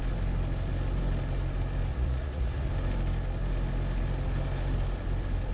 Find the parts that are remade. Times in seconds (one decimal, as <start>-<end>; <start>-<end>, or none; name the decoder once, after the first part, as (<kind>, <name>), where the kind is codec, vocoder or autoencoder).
1.9-2.7 (vocoder, Vocos)